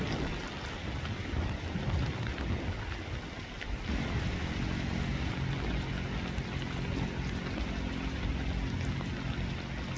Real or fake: real